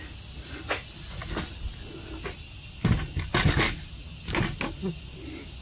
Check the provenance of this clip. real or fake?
real